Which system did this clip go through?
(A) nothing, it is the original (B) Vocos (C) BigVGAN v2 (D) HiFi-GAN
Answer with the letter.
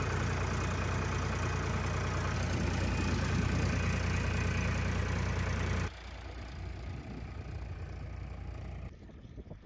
A